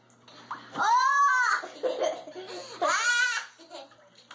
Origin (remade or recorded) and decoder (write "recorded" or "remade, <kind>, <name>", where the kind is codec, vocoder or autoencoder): recorded